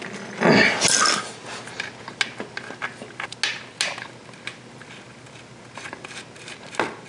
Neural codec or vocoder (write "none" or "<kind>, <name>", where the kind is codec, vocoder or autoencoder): none